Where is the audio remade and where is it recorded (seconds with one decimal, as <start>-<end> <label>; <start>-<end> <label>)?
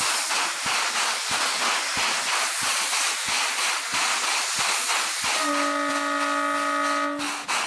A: 0.0-7.7 recorded